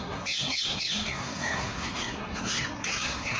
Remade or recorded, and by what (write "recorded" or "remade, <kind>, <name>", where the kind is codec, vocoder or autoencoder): remade, codec, SNAC